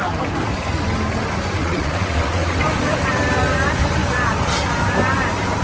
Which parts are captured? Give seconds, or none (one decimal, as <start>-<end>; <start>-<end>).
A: 0.0-1.6; 2.6-5.6